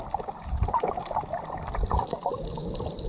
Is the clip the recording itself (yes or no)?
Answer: yes